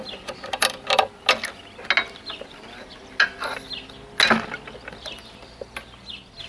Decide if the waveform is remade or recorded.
recorded